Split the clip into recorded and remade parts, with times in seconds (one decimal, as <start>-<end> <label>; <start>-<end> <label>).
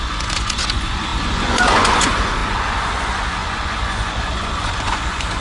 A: 0.0-5.4 remade